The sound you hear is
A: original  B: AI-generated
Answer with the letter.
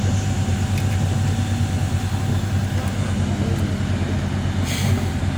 A